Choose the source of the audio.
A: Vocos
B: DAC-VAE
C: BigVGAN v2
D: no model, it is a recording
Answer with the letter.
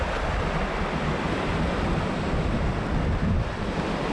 D